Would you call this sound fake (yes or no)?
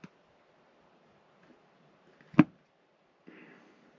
no